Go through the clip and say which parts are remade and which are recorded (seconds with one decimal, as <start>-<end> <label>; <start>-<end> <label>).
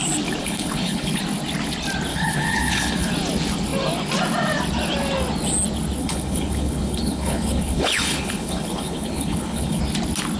0.0-0.4 recorded; 0.4-1.2 remade; 1.2-2.1 recorded; 2.1-3.1 remade; 3.1-6.0 recorded; 6.0-9.8 remade; 9.8-10.4 recorded